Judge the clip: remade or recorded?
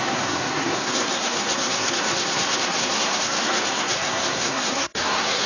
remade